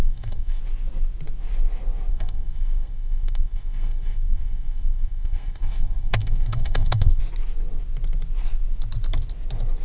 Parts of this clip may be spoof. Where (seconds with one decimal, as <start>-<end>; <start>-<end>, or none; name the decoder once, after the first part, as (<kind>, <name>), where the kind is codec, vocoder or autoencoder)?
0.0-0.6 (codec, SNAC); 2.1-7.2